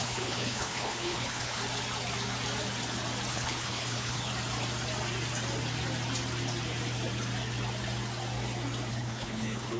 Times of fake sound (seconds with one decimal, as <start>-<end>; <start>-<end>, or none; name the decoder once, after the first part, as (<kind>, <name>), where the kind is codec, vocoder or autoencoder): 0.0-1.6 (codec, HILCodec); 3.3-4.3; 8.9-9.8